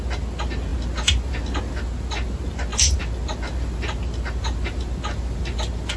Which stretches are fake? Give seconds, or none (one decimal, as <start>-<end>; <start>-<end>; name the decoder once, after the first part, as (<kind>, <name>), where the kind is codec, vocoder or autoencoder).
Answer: none